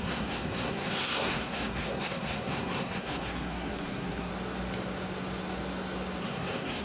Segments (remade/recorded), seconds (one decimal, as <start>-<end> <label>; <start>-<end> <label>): 0.0-4.3 remade; 4.3-6.2 recorded; 6.2-6.8 remade